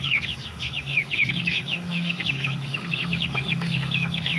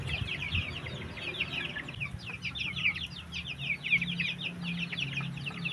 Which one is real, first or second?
second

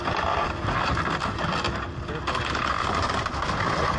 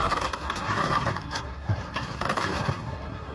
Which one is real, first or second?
first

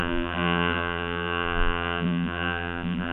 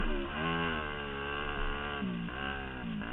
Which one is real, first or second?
second